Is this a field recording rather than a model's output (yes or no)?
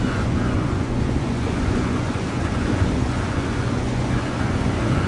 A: no